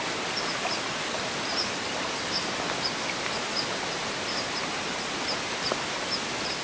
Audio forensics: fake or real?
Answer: real